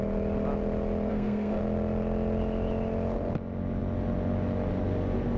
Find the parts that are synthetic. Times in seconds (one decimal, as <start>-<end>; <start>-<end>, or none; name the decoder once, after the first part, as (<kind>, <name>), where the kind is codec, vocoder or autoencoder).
1.1-1.6 (codec, SNAC)